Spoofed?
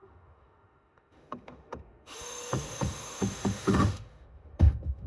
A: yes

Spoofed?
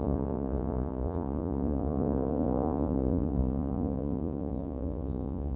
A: yes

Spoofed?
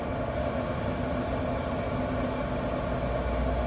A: no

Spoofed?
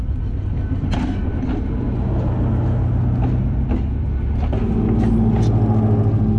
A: no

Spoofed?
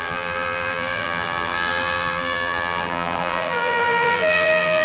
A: yes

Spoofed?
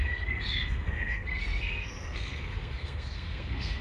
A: yes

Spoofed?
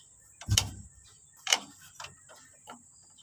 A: yes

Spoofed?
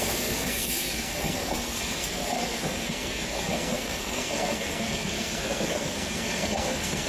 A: yes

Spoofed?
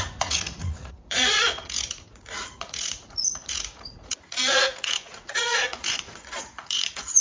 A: yes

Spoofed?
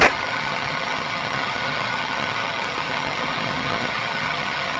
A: yes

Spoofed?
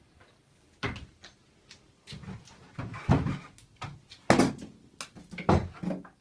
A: no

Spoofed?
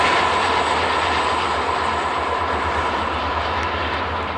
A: no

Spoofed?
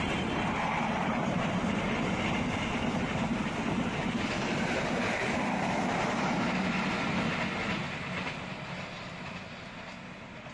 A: no